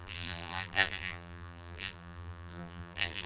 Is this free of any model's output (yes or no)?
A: no